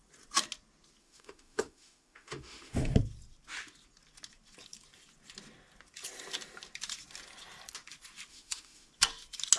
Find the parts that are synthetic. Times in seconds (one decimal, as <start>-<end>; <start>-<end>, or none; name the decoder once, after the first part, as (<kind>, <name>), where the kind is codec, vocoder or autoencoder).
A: 1.0-2.9 (autoencoder, DAC-VAE); 8.3-8.9